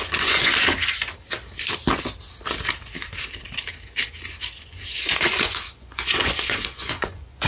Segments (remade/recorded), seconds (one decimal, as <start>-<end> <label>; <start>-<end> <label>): 0.0-0.5 remade; 0.5-4.6 recorded; 4.6-7.5 remade